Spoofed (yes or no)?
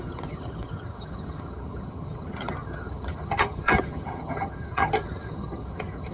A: yes